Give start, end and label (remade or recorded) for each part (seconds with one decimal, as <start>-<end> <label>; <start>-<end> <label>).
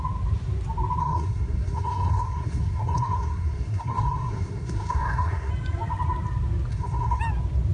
0.0-1.0 recorded; 1.0-5.5 remade; 5.5-6.7 recorded; 6.7-7.2 remade; 7.2-7.7 recorded